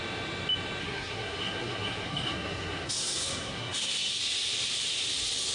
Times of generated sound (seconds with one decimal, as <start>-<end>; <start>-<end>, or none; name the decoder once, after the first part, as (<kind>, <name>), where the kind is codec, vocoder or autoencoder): 0.8-4.1 (codec, SNAC)